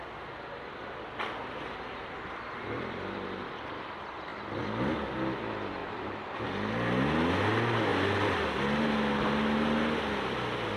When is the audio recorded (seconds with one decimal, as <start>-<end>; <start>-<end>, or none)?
0.0-1.4; 2.0-5.8; 6.4-10.8